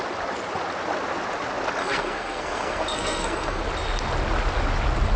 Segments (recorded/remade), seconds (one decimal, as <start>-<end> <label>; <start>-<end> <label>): 0.0-1.8 recorded; 1.8-3.6 remade; 3.6-5.2 recorded